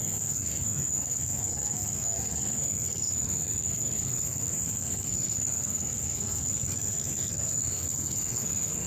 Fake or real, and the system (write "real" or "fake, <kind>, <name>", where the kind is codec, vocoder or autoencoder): fake, codec, SNAC